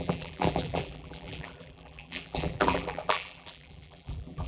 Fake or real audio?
fake